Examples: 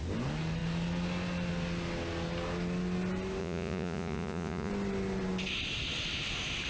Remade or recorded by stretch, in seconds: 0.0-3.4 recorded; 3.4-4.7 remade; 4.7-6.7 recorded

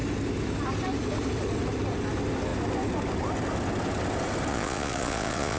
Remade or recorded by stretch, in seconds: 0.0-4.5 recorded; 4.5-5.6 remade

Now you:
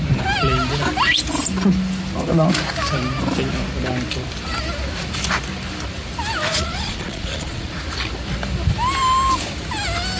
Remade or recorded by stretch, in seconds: 0.0-6.5 recorded; 6.5-7.7 remade; 7.7-10.2 recorded

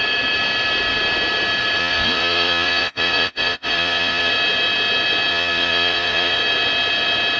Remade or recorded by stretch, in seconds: 0.0-1.8 recorded; 1.8-4.3 remade; 4.3-5.3 recorded; 5.3-6.4 remade; 6.4-7.4 recorded